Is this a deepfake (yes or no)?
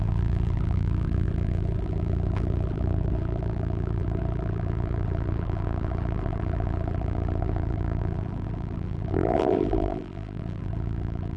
yes